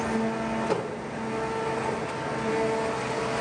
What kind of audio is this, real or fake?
real